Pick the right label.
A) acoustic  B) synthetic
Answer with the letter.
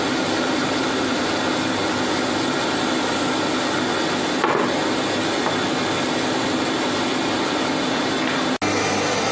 A